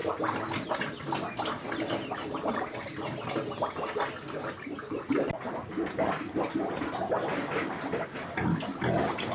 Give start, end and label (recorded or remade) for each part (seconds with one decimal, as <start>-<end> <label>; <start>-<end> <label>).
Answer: 0.0-9.3 recorded